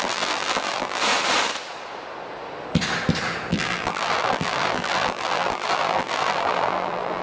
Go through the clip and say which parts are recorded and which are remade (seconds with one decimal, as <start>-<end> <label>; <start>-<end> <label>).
0.0-1.0 remade; 1.0-3.5 recorded; 3.5-7.2 remade